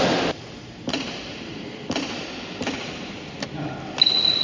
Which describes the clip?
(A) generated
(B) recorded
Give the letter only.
B